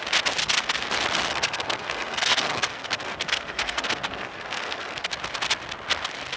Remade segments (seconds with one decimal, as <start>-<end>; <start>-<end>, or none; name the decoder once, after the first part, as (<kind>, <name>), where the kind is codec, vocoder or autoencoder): 0.4-0.9 (codec, SNAC); 1.3-5.1